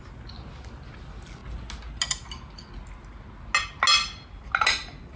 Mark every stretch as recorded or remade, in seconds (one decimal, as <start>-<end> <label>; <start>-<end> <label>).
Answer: 0.0-5.2 recorded

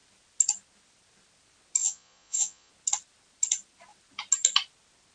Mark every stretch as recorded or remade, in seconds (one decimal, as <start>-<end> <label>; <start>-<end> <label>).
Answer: 0.0-1.8 recorded; 1.8-2.7 remade; 2.7-5.1 recorded

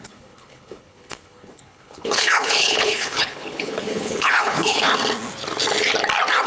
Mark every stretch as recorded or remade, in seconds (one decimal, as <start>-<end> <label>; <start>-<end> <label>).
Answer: 0.0-4.9 remade; 4.9-6.5 recorded

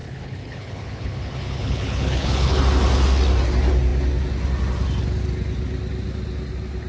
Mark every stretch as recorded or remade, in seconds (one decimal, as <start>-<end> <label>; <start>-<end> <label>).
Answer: 0.0-2.6 remade; 2.6-6.9 recorded